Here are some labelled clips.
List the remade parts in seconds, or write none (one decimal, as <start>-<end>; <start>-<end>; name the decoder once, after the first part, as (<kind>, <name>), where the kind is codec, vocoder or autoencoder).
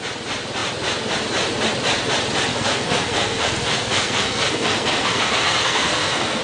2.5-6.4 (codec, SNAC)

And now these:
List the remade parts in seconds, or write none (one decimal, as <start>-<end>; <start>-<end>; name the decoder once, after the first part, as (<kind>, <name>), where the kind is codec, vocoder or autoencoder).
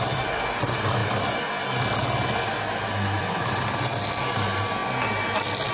none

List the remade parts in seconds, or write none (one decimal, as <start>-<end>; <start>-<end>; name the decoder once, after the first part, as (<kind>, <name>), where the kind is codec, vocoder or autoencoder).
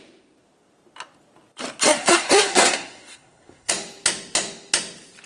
1.9-3.7 (codec, SNAC)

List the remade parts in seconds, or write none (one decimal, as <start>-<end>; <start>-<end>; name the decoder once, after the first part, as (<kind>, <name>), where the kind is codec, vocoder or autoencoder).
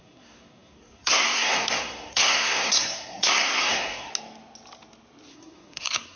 0.0-4.1 (codec, SNAC); 5.3-6.2